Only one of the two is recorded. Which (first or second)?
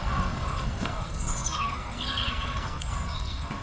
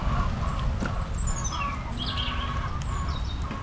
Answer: second